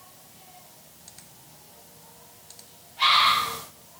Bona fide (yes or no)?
yes